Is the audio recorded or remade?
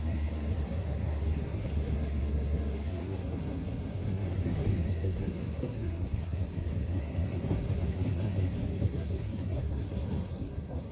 remade